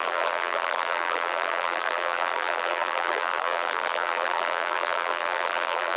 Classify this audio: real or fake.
fake